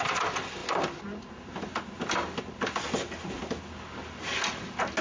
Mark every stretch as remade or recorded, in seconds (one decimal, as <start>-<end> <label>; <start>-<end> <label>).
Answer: 0.0-5.0 recorded